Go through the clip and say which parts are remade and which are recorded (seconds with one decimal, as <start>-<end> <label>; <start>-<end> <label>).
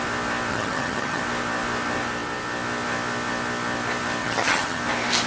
0.0-0.5 recorded; 0.5-1.2 remade; 1.2-4.2 recorded; 4.2-4.8 remade; 4.8-5.3 recorded